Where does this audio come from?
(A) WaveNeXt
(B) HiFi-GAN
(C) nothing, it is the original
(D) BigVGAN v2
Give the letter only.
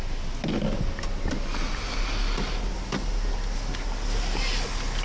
C